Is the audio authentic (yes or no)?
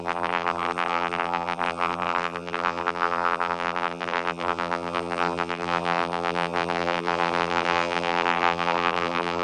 no